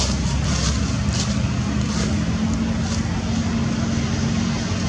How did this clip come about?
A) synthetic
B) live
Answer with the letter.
B